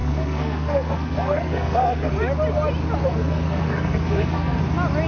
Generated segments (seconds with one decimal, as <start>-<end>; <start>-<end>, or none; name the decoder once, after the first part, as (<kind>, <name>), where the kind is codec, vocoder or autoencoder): 0.0-2.1 (codec, SNAC); 3.0-4.6